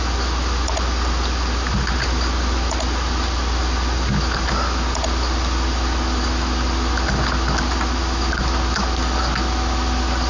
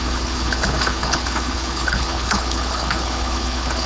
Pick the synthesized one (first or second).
second